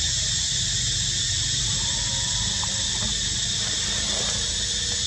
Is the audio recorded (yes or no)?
yes